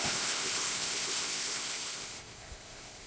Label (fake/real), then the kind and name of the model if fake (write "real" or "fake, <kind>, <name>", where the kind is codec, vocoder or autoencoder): fake, codec, ZipCodec